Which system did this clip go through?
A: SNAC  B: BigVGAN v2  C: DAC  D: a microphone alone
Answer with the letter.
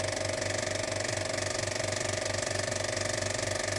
D